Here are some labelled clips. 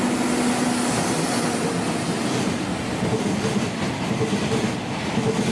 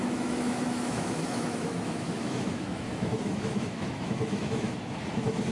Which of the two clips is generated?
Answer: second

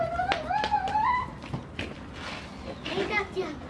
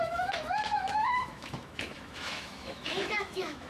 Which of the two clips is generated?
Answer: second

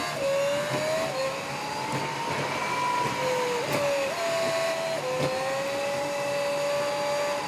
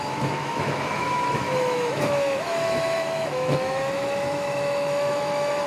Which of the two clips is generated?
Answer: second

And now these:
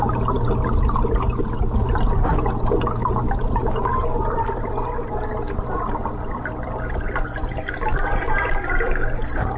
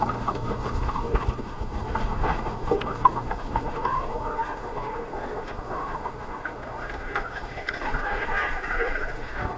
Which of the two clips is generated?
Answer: second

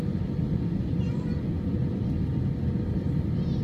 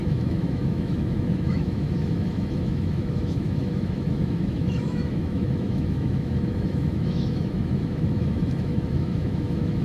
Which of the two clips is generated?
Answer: second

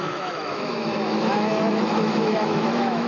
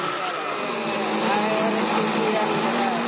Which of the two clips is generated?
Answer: first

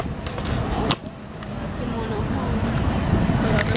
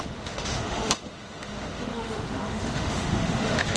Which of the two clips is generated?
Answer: second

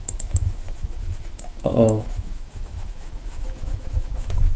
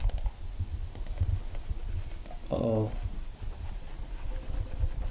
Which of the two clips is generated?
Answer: first